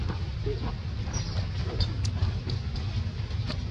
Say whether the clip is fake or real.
real